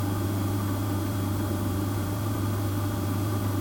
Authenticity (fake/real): fake